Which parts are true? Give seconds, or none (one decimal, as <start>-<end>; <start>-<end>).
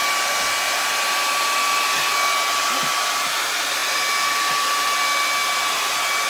0.0-6.3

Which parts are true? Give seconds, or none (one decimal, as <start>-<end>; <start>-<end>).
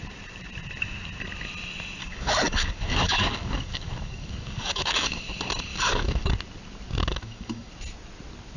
0.0-2.0; 5.2-5.7; 6.3-7.1; 7.7-8.6